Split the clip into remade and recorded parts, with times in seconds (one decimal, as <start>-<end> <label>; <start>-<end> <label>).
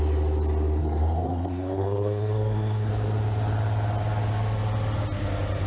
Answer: 0.0-0.8 recorded; 0.8-2.9 remade; 2.9-5.7 recorded